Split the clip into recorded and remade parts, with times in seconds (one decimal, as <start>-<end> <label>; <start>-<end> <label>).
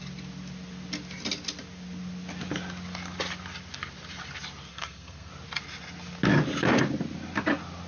0.0-4.7 recorded; 4.7-5.3 remade; 5.3-7.9 recorded